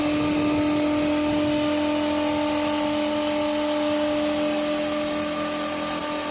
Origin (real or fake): real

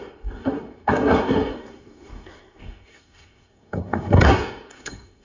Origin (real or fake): fake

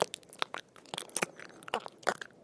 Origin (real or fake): real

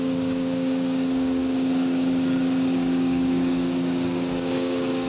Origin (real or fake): fake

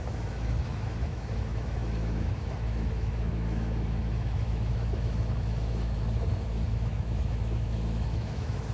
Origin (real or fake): fake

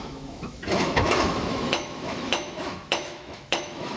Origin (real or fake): fake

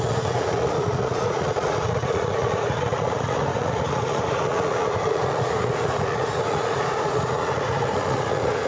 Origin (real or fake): fake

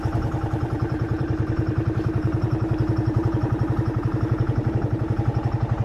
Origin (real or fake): fake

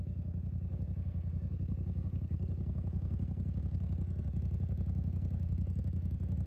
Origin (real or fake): fake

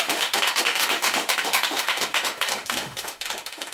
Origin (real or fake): fake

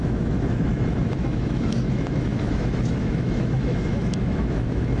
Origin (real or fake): fake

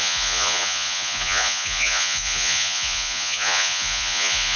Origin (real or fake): fake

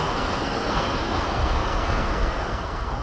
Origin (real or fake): fake